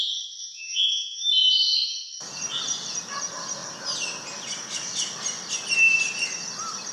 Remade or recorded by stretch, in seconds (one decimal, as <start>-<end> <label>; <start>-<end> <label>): 0.0-0.4 recorded; 0.4-1.3 remade; 1.3-6.9 recorded